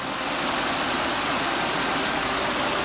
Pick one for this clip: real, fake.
real